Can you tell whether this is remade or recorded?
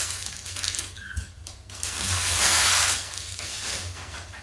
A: remade